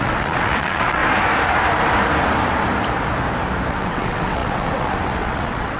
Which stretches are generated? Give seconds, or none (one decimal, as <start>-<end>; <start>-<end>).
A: 0.0-1.0; 3.7-5.8